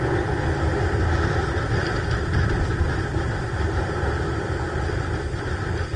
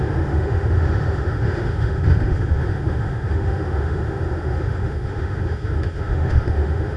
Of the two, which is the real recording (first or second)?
first